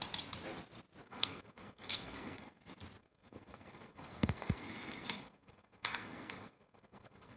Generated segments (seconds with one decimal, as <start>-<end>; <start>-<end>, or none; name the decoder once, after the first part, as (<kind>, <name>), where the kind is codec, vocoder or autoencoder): 1.0-2.6 (codec, SNAC); 3.0-7.4